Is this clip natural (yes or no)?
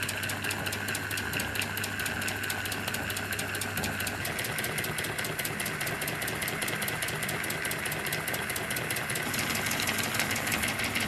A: yes